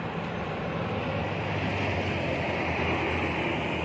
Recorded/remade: recorded